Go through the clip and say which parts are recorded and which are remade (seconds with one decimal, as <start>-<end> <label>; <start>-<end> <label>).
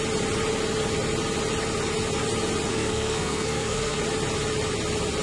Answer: 0.0-2.7 recorded; 2.7-4.0 remade; 4.0-5.2 recorded